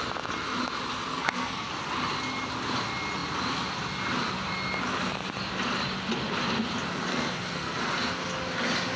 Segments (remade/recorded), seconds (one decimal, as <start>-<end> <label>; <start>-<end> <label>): 0.0-1.1 recorded; 1.1-1.7 remade; 1.7-7.1 recorded; 7.1-7.8 remade; 7.8-9.0 recorded